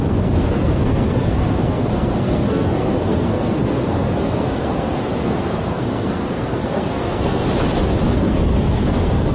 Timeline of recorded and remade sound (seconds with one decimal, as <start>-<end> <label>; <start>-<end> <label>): 0.0-7.4 remade; 7.4-8.1 recorded; 8.1-9.3 remade